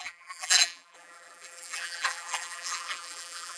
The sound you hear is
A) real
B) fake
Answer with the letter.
B